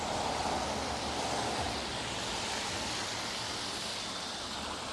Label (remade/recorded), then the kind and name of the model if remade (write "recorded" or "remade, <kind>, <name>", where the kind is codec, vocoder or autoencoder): recorded